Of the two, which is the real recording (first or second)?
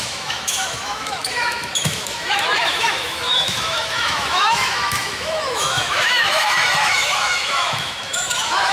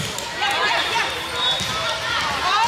second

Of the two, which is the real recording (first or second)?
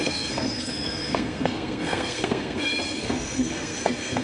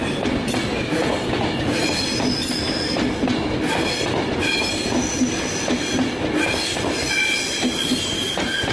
second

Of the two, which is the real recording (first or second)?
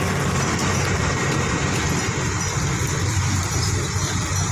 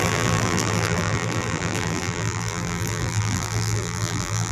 first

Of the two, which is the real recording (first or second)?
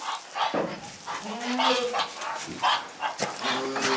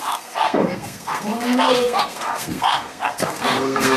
first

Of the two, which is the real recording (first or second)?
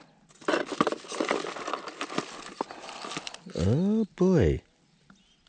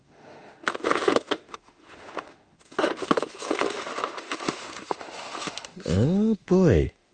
first